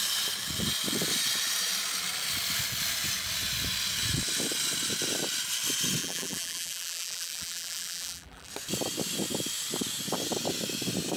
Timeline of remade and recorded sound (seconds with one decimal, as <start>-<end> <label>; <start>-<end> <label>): 0.0-6.0 recorded; 6.0-8.5 remade; 8.5-11.2 recorded